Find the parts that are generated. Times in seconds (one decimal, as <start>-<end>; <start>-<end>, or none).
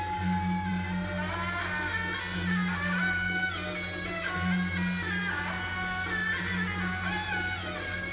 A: none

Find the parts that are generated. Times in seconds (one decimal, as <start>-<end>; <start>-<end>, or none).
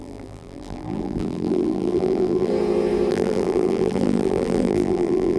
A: 0.0-2.5; 3.1-5.4